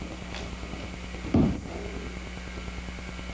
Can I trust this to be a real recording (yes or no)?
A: yes